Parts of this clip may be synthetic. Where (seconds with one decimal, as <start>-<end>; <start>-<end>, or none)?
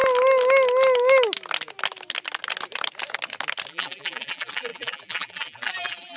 3.7-6.2